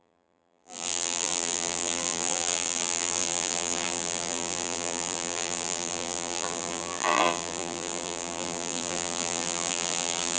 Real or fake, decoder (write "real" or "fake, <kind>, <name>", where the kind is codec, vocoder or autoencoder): fake, vocoder, BigVGAN v2